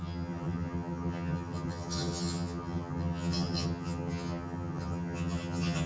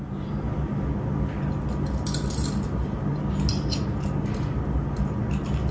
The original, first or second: second